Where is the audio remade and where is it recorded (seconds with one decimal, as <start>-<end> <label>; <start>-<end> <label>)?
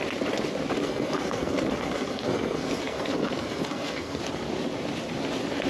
0.0-0.8 recorded; 0.8-4.2 remade; 4.2-5.7 recorded